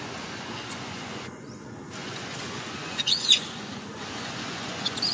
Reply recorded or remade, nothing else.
remade